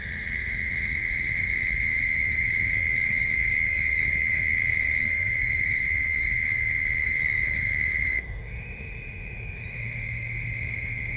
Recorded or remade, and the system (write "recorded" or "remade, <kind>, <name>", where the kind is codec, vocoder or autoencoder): remade, autoencoder, DAC-VAE